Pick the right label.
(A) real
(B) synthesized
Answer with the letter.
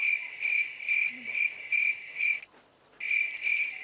A